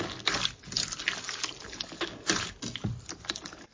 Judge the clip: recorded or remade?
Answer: recorded